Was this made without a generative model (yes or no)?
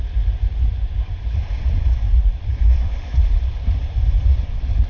no